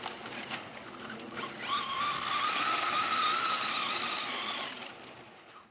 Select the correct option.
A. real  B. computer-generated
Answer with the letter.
A